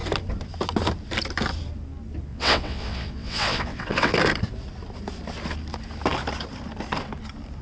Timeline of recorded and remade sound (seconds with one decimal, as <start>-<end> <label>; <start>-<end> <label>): 0.0-2.3 recorded; 2.3-4.1 remade; 4.1-7.6 recorded

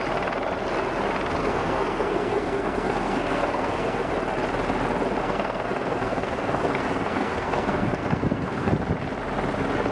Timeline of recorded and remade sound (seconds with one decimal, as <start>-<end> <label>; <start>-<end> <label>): 0.0-1.4 recorded; 1.4-4.1 remade; 4.1-5.2 recorded; 5.2-8.7 remade; 8.7-9.9 recorded